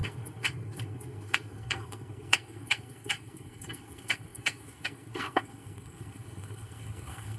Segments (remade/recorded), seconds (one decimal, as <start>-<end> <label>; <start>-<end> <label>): 0.0-7.4 remade